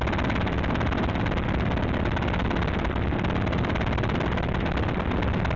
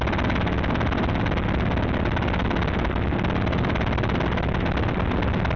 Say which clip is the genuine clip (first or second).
second